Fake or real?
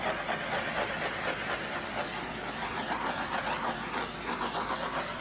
real